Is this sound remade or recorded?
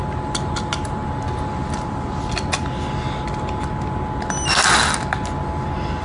recorded